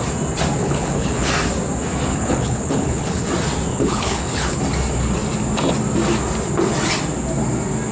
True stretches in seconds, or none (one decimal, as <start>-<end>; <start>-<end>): 0.0-0.6; 1.3-2.1; 3.3-3.7; 4.6-7.9